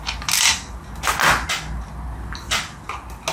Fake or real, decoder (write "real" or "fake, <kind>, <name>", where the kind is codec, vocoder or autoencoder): real